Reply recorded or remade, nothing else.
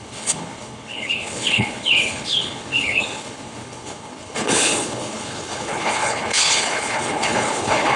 remade